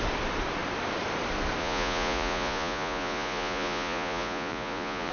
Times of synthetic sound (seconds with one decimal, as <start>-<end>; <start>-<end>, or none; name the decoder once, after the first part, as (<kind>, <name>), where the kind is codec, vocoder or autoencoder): 1.6-5.1 (vocoder, Vocos)